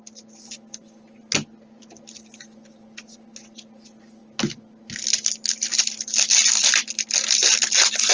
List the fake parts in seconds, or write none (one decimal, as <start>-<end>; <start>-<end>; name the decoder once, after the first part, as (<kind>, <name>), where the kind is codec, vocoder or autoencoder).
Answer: none